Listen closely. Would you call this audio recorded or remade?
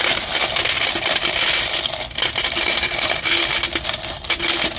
recorded